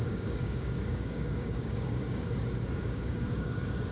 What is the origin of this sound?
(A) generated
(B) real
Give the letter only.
A